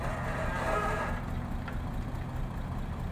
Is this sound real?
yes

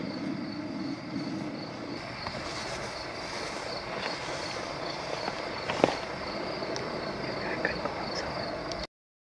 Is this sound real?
yes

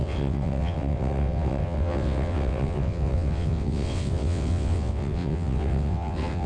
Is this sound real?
no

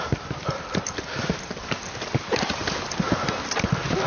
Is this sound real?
yes